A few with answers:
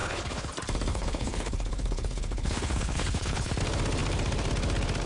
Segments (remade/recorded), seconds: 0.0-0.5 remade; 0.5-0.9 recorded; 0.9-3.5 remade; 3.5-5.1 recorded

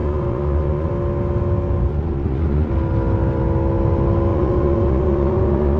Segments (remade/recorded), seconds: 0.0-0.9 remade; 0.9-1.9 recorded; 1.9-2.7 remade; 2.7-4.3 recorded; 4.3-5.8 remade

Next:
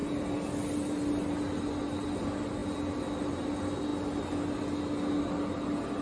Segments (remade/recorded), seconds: 0.0-6.0 recorded